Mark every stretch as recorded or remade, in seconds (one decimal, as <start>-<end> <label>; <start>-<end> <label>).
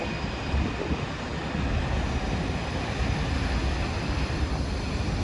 0.0-5.2 recorded